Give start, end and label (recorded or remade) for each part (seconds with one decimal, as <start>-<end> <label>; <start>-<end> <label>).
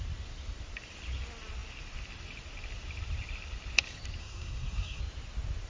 0.0-4.2 recorded; 4.2-5.0 remade; 5.0-5.7 recorded